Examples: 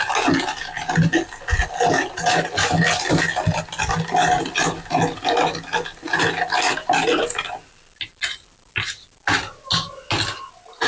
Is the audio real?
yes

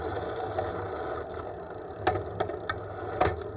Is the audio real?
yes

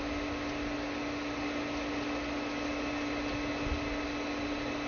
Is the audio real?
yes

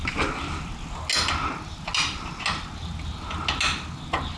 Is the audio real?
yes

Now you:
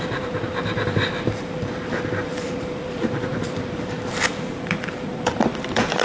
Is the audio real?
no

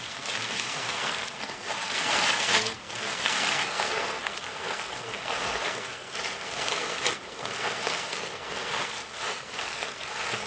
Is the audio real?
no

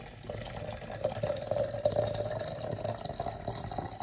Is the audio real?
yes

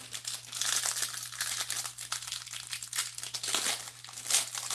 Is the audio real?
yes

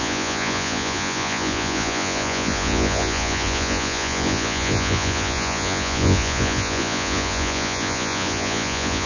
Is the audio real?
no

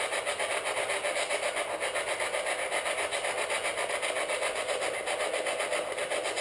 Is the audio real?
yes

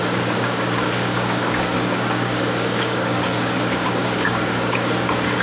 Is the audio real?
no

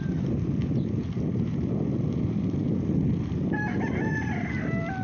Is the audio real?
yes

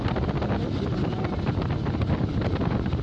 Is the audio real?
yes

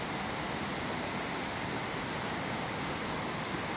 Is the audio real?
yes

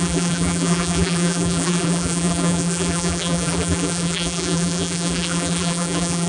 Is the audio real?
no